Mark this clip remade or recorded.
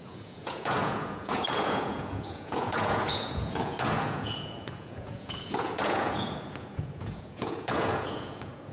remade